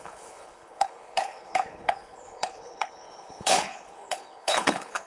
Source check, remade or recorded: remade